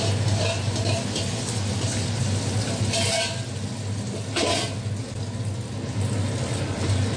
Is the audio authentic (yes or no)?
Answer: yes